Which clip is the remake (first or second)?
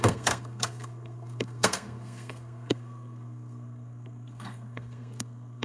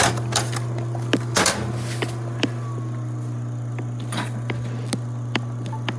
first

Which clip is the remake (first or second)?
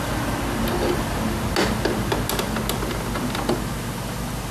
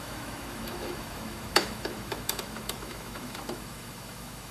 second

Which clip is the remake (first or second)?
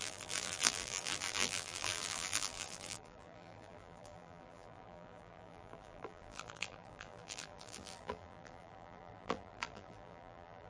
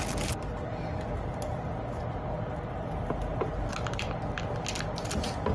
first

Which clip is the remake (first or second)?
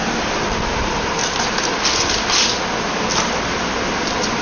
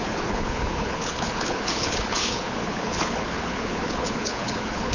second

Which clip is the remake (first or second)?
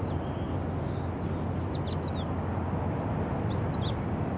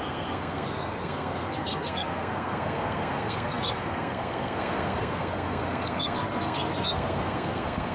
second